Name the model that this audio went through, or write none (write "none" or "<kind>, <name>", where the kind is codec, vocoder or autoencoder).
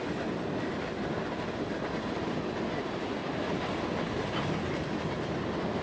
none